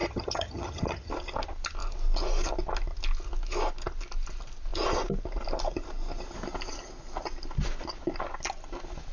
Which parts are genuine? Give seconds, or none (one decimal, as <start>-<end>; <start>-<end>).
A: 1.1-9.1